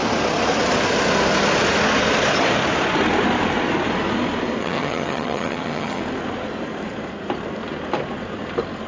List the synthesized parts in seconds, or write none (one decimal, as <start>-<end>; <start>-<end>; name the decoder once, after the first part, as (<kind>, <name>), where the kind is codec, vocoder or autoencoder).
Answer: 4.6-6.0 (vocoder, HiFi-GAN)